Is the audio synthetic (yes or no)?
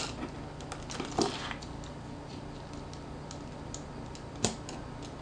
no